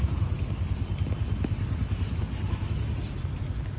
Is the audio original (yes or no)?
yes